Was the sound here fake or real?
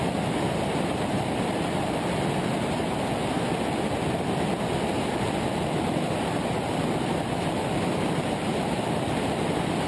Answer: real